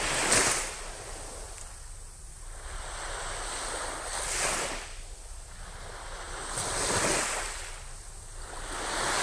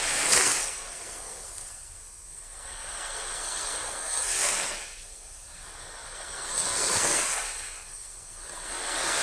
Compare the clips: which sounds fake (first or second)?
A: second